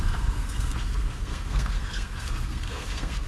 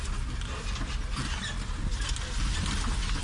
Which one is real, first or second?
second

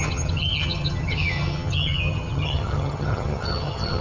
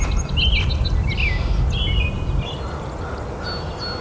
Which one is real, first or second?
second